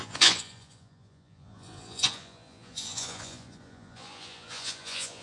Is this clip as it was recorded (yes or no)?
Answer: no